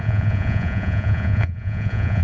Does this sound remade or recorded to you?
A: remade